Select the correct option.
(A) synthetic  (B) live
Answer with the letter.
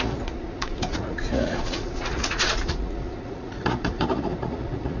A